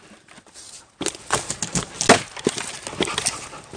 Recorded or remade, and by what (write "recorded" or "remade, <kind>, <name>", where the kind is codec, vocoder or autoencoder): recorded